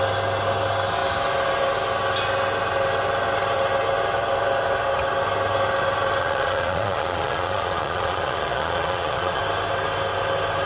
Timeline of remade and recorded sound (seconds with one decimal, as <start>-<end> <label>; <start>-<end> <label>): 0.0-6.2 recorded; 6.2-9.4 remade; 9.4-10.7 recorded